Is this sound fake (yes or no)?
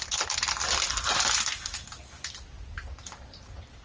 no